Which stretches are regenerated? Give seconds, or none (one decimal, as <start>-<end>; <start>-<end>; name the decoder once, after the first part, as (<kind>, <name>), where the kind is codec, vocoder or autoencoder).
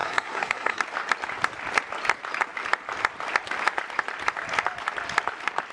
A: 0.0-0.8 (codec, SNAC)